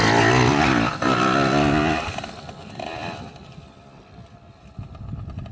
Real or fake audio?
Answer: real